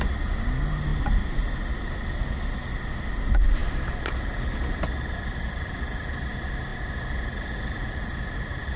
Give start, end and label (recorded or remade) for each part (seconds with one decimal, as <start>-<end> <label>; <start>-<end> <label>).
0.0-8.8 recorded